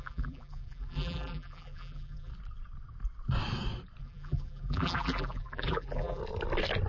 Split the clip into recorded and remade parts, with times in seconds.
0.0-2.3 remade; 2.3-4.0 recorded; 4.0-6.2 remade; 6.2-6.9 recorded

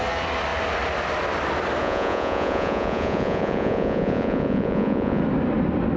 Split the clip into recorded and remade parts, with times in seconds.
0.0-1.8 recorded; 1.8-5.2 remade; 5.2-6.0 recorded

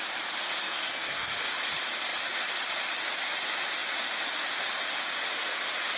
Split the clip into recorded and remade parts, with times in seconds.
0.0-0.6 recorded; 0.6-1.4 remade; 1.4-6.0 recorded

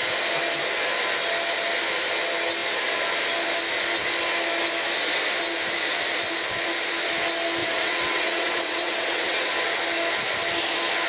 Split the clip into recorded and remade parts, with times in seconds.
0.0-7.6 recorded; 7.6-9.5 remade; 9.5-11.1 recorded

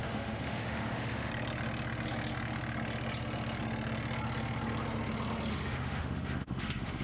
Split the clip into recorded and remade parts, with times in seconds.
0.0-1.3 remade; 1.3-5.5 recorded; 5.5-7.0 remade

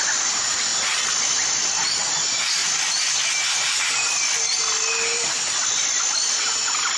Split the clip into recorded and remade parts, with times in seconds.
0.0-7.0 recorded